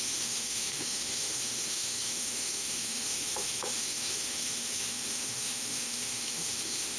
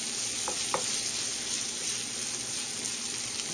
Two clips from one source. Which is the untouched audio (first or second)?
second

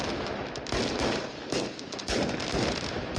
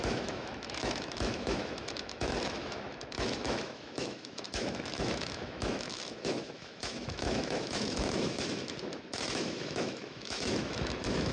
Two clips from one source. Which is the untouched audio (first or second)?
first